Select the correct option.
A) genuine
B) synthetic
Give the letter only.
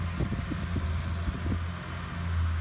A